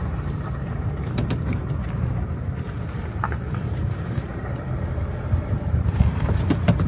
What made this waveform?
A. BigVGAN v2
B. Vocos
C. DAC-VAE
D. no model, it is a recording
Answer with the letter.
A